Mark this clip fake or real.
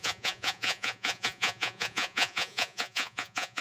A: fake